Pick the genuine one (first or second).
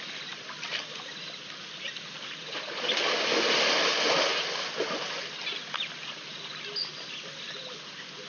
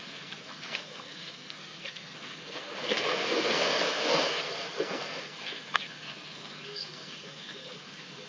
first